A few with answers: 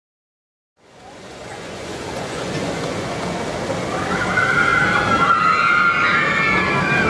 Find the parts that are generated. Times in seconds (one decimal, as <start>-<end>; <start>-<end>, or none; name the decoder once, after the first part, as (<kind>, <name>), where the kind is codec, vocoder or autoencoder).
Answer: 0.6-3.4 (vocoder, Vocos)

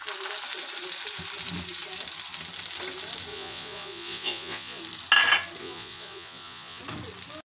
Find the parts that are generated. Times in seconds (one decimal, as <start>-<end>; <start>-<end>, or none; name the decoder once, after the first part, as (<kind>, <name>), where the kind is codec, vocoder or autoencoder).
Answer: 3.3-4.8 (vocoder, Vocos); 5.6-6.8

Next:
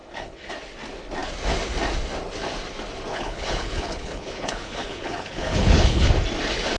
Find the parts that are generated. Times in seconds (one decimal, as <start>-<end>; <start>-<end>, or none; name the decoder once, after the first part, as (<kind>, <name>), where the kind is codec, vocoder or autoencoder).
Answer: 0.0-0.5 (codec, HILCodec); 3.1-6.1

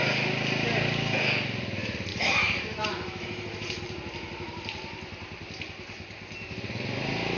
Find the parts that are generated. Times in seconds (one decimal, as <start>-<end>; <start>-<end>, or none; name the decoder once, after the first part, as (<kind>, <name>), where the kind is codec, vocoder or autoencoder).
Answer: 2.1-3.8 (autoencoder, DAC-VAE)